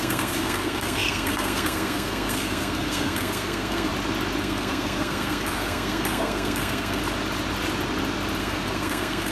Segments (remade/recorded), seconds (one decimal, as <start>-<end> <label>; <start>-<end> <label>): 0.0-3.9 remade; 3.9-4.4 recorded; 4.4-7.0 remade; 7.0-8.4 recorded; 8.4-9.3 remade